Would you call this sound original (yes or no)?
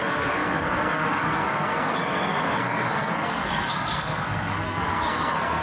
no